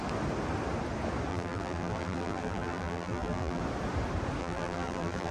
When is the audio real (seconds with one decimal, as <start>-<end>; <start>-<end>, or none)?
0.0-1.3; 3.6-4.4